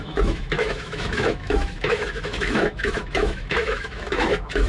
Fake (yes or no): yes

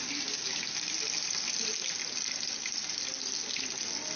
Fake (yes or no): no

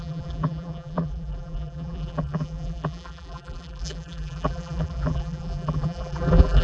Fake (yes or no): yes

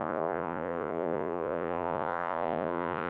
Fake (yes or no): yes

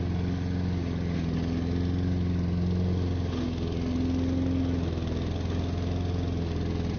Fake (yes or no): no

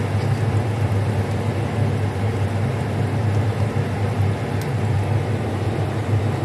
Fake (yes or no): no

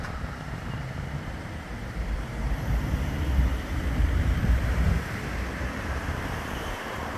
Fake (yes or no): yes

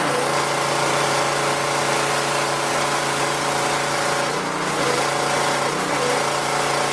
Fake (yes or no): no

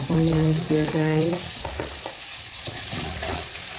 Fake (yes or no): yes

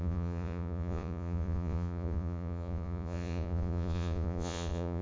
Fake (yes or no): yes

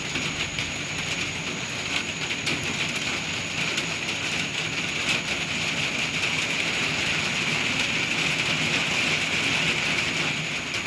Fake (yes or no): no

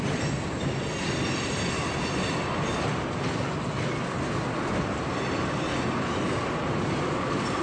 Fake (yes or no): no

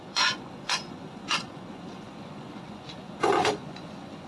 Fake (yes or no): yes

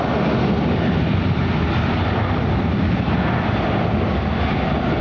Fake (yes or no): no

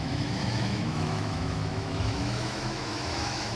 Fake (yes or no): yes